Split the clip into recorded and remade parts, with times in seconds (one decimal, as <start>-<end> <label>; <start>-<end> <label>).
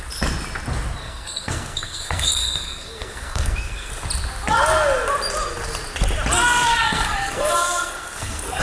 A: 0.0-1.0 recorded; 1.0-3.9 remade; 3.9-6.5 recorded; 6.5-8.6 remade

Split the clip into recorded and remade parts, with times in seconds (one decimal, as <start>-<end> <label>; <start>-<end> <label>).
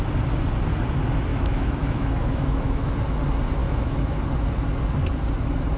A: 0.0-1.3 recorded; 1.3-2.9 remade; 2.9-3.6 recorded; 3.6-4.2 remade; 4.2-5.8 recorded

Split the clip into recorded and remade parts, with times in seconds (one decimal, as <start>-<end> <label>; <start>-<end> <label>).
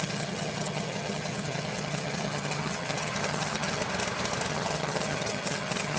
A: 0.0-3.8 remade; 3.8-4.5 recorded; 4.5-6.0 remade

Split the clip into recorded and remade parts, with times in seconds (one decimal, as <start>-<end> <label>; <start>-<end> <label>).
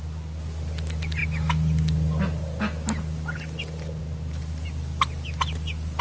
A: 0.0-6.0 recorded